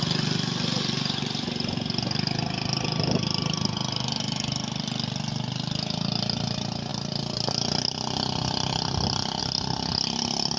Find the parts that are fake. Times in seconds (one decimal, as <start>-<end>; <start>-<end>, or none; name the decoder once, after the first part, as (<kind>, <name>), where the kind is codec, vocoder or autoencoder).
none